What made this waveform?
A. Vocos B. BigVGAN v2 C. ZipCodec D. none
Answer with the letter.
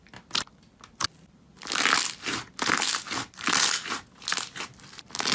D